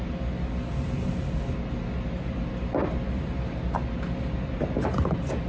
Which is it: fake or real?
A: real